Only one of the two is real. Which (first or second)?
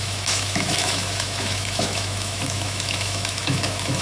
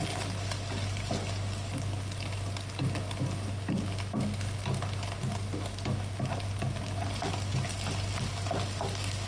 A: second